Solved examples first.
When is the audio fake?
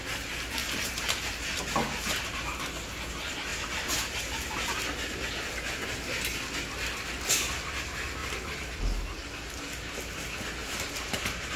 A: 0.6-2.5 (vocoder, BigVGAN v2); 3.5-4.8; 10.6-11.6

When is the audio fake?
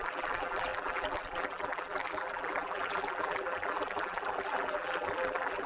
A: 0.0-5.7 (vocoder, BigVGAN v2)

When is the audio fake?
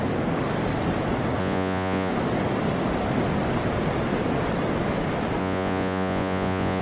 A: 1.4-2.1 (vocoder, Vocos); 5.4-6.8